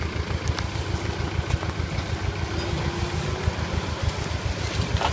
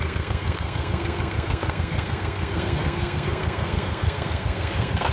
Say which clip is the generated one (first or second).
second